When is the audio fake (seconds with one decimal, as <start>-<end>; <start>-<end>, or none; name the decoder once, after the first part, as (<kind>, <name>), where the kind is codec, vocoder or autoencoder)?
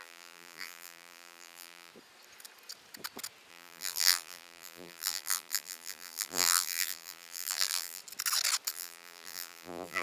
0.0-1.9 (vocoder, BigVGAN v2); 3.5-8.0; 8.7-10.0